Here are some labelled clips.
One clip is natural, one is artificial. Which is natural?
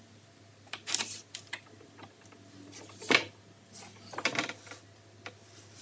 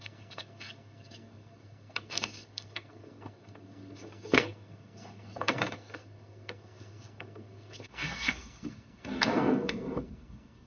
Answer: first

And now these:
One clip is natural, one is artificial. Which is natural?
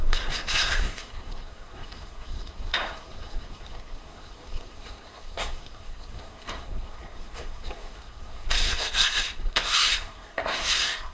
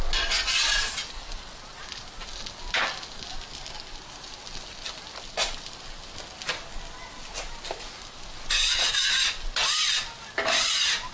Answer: second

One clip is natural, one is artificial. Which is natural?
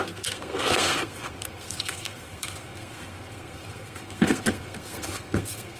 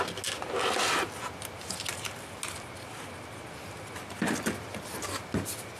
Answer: second